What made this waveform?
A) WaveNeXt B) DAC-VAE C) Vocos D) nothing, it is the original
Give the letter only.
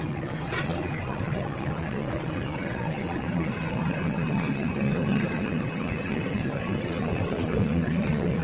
A